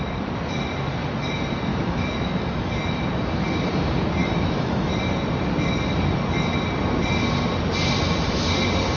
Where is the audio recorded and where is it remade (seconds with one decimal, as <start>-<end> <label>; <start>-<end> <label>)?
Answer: 0.0-1.7 recorded; 1.7-3.1 remade; 3.1-4.2 recorded; 4.2-4.9 remade; 4.9-9.0 recorded